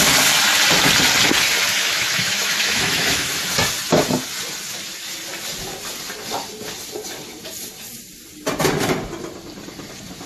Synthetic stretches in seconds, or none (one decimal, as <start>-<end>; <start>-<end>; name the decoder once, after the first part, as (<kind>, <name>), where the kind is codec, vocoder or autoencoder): 1.7-3.4 (autoencoder, DAC-VAE)